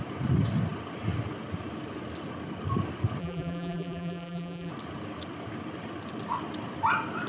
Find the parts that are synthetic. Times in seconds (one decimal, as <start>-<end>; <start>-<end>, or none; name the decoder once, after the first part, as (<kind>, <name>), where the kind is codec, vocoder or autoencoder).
3.2-4.7 (vocoder, BigVGAN v2)

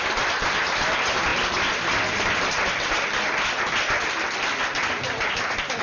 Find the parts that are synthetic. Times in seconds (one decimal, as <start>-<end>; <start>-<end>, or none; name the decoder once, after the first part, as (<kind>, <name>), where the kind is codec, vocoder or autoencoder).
none

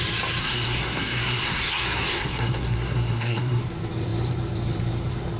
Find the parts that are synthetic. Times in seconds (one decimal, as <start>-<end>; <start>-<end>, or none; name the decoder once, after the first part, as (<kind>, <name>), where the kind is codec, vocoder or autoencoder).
0.4-3.6 (codec, SNAC)

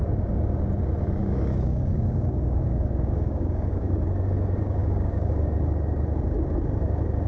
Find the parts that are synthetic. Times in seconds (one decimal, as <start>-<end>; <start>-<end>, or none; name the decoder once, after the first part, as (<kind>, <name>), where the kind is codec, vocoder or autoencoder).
1.2-4.0 (codec, DAC); 4.8-5.3

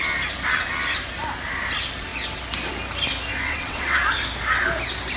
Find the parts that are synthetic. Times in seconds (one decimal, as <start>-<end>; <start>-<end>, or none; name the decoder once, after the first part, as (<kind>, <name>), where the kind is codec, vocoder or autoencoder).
3.4-4.0 (vocoder, WaveNeXt)

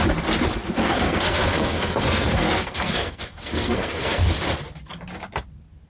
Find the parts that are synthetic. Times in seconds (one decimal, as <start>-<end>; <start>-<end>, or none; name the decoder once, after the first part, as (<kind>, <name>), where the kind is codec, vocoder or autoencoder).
0.8-4.3 (codec, SNAC)